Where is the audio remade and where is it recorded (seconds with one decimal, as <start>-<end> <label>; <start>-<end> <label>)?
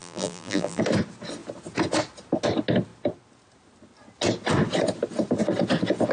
0.0-0.8 remade; 0.8-6.1 recorded